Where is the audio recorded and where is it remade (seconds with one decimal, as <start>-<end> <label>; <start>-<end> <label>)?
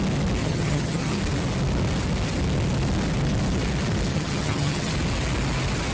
0.0-0.4 recorded; 0.4-1.2 remade; 1.2-4.1 recorded; 4.1-4.9 remade; 4.9-5.9 recorded